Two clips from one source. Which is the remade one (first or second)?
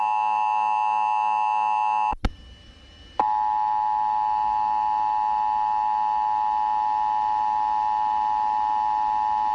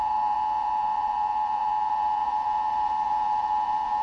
second